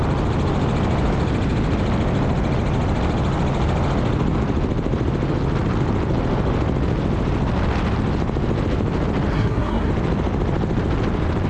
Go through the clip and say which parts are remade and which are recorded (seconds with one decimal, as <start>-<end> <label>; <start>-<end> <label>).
0.0-9.3 recorded; 9.3-9.9 remade; 9.9-11.5 recorded